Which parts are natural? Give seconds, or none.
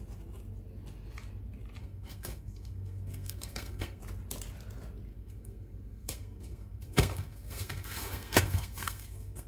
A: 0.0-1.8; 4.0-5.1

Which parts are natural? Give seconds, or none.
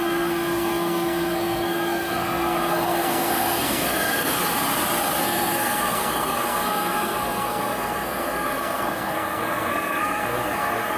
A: 4.4-5.2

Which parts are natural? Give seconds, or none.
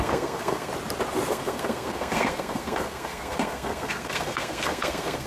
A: 0.7-1.3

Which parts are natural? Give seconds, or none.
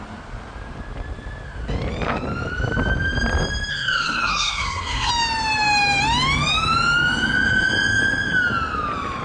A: 0.0-3.7; 5.1-9.2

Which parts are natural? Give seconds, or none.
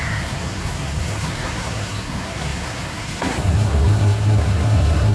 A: none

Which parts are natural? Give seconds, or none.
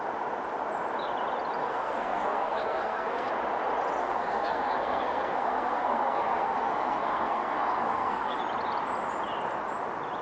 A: 0.0-1.6; 3.3-4.0; 8.4-10.2